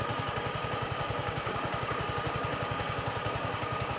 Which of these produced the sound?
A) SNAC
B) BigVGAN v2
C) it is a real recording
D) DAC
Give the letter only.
D